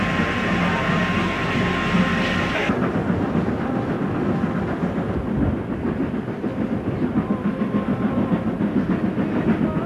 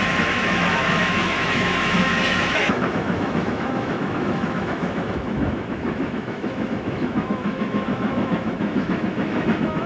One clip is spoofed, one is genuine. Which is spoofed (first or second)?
second